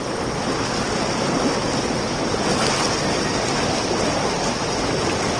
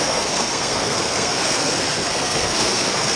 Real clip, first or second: first